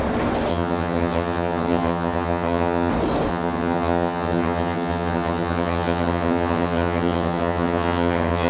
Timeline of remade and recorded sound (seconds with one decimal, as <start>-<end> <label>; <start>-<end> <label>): 0.0-0.5 recorded; 0.5-2.9 remade; 2.9-3.3 recorded; 3.3-8.5 remade